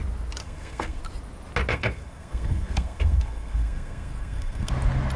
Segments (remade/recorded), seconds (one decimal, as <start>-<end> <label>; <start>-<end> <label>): 0.0-0.4 recorded; 0.4-1.0 remade; 1.0-1.7 recorded; 1.7-4.7 remade; 4.7-5.2 recorded